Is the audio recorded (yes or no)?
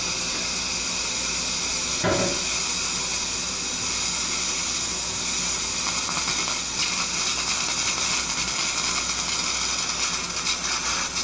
yes